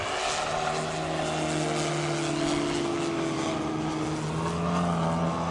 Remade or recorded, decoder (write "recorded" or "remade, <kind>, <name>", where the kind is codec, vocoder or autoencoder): recorded